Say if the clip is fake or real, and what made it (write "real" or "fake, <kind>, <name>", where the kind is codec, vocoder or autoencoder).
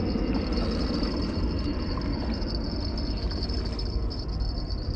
real